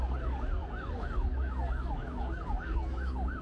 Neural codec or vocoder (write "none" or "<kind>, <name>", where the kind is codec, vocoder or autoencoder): codec, DAC